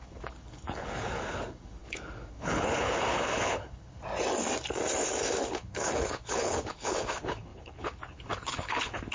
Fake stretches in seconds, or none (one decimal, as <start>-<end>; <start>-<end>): 0.0-4.0; 5.5-9.1

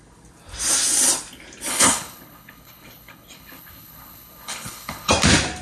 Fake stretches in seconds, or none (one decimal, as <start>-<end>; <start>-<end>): 1.7-5.1

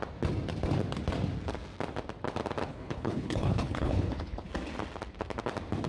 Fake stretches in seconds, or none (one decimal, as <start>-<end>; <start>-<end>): 2.7-4.5

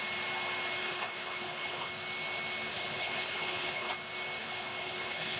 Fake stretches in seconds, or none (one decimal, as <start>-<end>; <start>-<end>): 0.8-1.9; 2.7-3.9; 4.4-5.4

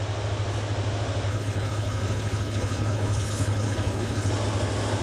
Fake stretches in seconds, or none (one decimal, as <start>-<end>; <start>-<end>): 1.3-4.3

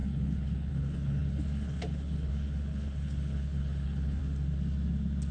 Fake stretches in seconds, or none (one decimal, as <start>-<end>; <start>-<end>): 0.0-4.2

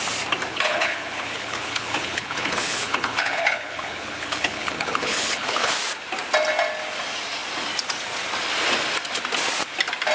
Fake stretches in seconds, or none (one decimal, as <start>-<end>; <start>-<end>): 0.5-5.7

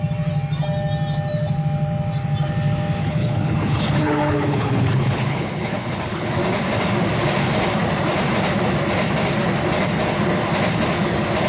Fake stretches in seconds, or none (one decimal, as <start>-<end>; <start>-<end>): 3.0-6.3